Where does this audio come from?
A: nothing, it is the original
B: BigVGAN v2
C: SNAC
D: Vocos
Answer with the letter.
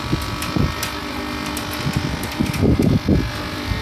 B